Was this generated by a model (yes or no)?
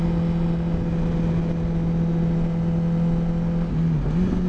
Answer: no